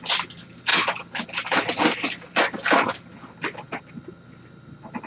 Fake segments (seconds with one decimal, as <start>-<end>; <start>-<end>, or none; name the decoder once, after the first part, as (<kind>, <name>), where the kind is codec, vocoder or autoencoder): none

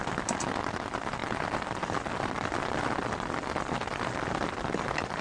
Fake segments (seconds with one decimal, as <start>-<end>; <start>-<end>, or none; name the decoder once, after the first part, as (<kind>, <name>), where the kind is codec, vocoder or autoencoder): none

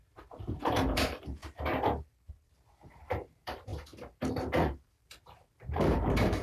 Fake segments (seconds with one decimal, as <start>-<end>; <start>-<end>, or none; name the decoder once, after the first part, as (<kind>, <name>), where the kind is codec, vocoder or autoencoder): 0.0-1.4 (vocoder, BigVGAN v2); 2.3-3.7; 4.3-6.4

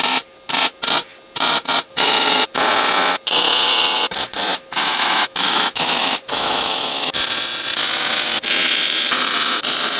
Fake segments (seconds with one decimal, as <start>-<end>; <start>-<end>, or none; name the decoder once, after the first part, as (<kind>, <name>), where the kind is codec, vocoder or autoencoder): 4.8-7.1 (autoencoder, DAC-VAE)

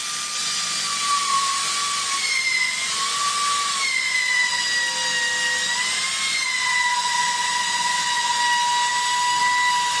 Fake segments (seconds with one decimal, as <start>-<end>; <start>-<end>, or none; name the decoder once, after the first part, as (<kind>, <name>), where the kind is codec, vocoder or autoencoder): 0.4-4.6 (vocoder, Vocos); 6.3-8.4